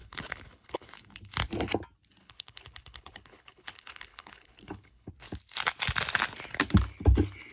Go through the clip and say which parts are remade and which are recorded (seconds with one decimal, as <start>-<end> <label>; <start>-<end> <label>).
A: 0.0-0.9 remade; 0.9-2.2 recorded; 2.2-5.1 remade; 5.1-7.5 recorded